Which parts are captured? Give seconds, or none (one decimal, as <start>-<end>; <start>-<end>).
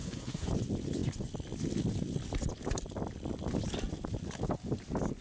0.5-5.2